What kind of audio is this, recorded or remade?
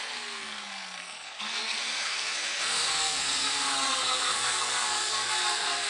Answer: remade